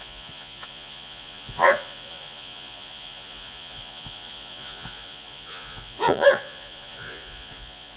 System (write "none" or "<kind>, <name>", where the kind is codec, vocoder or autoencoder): vocoder, Vocos